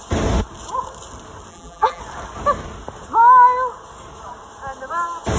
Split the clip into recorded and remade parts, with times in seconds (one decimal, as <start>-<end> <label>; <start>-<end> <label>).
0.0-1.5 recorded; 1.5-2.0 remade; 2.0-5.4 recorded